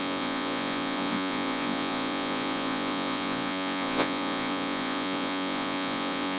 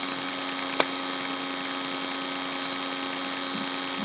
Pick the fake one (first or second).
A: first